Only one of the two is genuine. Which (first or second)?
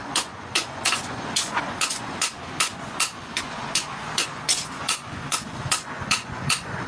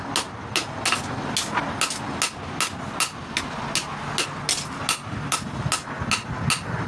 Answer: second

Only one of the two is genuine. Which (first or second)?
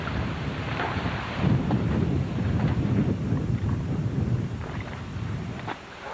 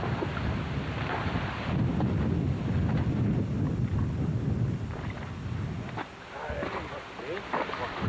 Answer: second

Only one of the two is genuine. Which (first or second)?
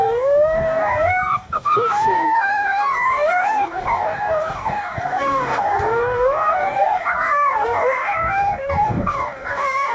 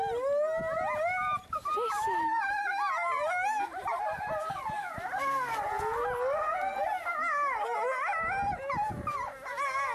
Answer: second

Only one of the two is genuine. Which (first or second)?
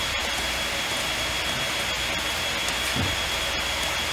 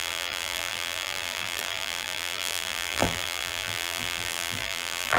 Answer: first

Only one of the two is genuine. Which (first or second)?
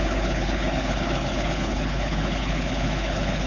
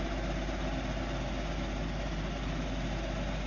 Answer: second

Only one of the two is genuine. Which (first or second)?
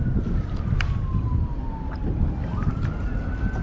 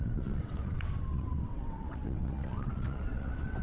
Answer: first